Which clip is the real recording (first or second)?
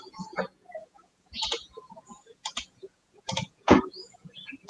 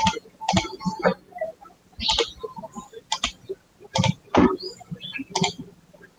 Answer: second